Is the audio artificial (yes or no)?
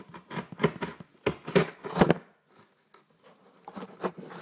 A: no